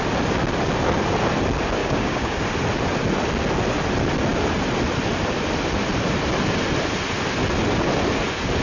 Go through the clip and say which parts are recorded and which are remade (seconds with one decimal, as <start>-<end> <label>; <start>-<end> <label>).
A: 0.0-1.8 recorded; 1.8-2.4 remade; 2.4-8.6 recorded